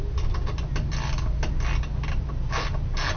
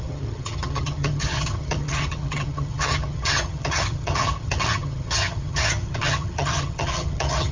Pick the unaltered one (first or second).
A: first